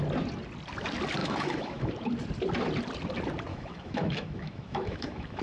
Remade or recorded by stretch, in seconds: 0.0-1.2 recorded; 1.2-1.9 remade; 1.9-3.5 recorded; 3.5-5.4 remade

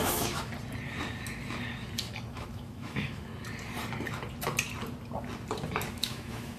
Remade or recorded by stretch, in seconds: 0.0-0.5 remade; 0.5-2.3 recorded; 2.3-3.3 remade; 3.3-5.9 recorded; 5.9-6.6 remade

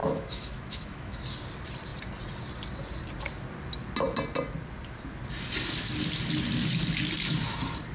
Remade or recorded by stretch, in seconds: 0.0-1.2 remade; 1.2-7.9 recorded

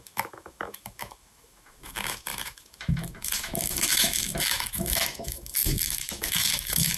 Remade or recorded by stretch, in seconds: 0.0-7.0 remade

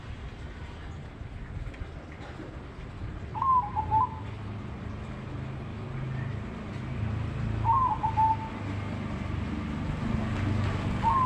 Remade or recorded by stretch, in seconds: 0.0-11.3 recorded

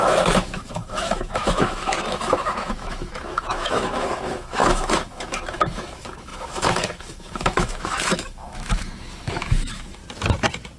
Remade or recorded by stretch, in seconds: 0.0-10.0 remade; 10.0-10.8 recorded